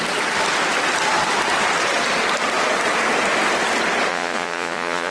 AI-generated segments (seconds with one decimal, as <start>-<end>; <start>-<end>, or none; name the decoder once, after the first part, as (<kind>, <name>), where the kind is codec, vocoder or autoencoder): 4.1-5.1 (vocoder, Vocos)